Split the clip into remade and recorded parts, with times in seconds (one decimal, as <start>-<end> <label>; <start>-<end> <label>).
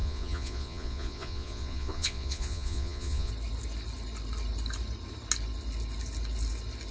0.0-3.3 remade; 3.3-6.9 recorded